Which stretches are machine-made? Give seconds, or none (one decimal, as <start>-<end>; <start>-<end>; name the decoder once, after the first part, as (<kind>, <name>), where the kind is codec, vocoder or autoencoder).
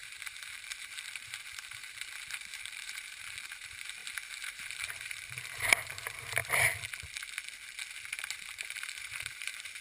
0.0-6.4 (vocoder, BigVGAN v2); 7.9-9.8